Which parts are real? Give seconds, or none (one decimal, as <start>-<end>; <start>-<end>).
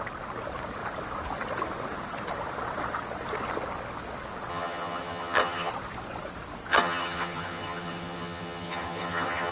0.0-4.5; 5.7-6.7